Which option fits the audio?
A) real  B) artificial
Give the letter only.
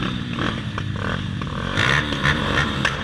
B